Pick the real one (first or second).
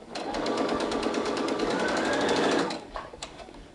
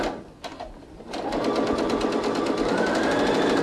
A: second